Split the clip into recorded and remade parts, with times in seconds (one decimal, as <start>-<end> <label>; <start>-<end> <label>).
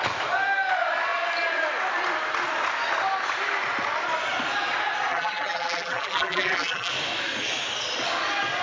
0.0-5.1 recorded; 5.1-6.9 remade; 6.9-8.6 recorded